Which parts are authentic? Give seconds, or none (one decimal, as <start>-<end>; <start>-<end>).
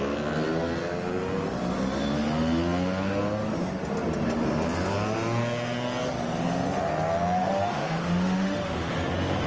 0.0-7.4; 8.9-9.5